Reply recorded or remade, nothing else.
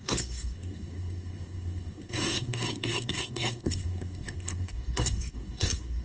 remade